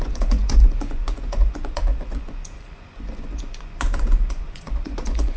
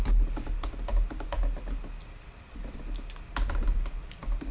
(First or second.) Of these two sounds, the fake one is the first